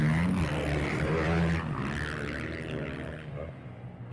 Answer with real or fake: real